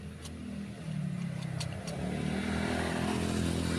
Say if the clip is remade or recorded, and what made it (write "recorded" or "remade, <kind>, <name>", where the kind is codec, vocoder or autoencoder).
recorded